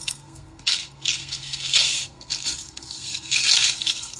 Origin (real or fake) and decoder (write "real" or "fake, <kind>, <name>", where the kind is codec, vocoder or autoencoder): fake, codec, SNAC